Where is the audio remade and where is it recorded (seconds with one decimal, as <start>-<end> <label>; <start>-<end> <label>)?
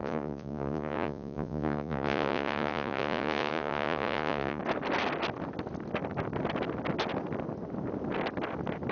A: 0.0-4.6 remade; 4.6-8.9 recorded